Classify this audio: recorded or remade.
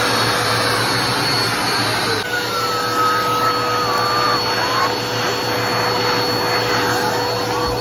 recorded